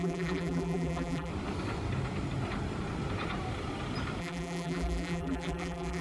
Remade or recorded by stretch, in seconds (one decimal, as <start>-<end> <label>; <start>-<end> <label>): 0.0-1.3 remade; 1.3-4.2 recorded; 4.2-6.0 remade